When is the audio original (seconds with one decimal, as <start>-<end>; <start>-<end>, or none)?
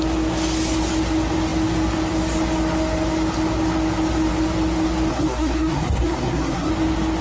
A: 0.0-5.1; 6.7-7.2